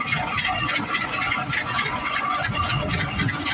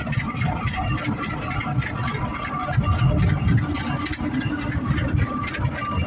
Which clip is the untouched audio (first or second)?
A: second